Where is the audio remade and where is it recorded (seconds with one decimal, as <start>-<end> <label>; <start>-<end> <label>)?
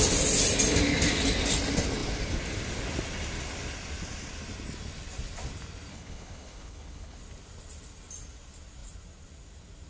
0.0-5.9 recorded; 5.9-7.2 remade; 7.2-9.9 recorded